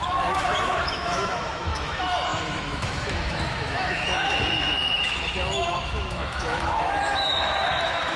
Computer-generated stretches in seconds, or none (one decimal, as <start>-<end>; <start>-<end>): 0.0-8.2